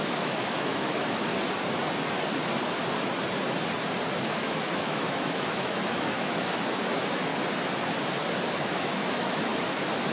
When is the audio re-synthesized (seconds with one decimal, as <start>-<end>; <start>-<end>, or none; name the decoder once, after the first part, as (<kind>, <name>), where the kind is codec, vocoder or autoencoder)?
0.0-1.3 (autoencoder, DAC-VAE); 4.2-7.3; 8.7-9.5